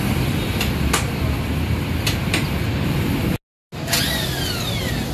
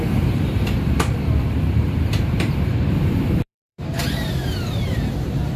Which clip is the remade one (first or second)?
second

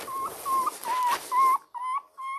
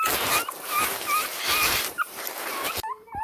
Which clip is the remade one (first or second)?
second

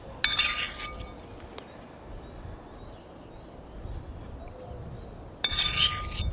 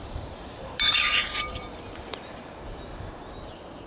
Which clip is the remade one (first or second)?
second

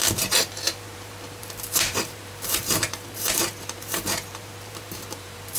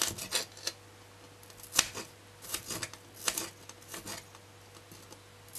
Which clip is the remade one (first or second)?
first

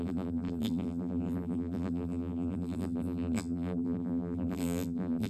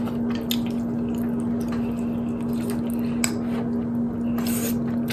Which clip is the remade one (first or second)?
first